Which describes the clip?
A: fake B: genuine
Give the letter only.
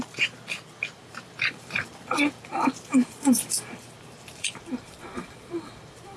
A